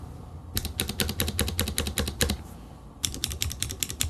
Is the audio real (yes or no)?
no